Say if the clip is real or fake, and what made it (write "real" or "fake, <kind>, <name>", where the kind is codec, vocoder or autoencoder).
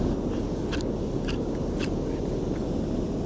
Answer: real